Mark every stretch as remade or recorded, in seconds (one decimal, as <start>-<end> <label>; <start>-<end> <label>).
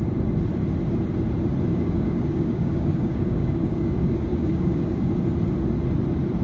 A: 0.0-1.7 recorded; 1.7-5.1 remade; 5.1-6.4 recorded